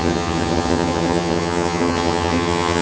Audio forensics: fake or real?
fake